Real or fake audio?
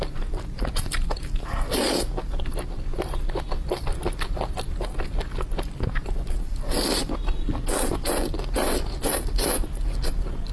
real